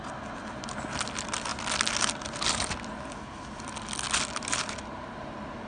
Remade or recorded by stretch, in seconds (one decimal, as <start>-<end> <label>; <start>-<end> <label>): 0.0-5.7 recorded